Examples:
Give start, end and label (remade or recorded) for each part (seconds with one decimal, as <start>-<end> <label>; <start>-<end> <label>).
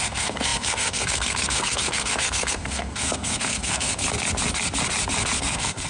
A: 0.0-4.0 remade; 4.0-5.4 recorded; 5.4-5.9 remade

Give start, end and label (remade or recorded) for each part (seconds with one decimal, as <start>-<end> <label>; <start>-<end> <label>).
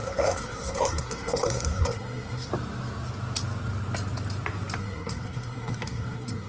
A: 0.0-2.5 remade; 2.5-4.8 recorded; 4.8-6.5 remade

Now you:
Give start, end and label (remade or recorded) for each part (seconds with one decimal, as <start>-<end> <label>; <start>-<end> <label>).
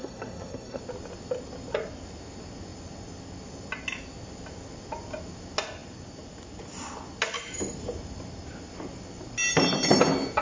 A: 0.0-0.8 remade; 0.8-10.4 recorded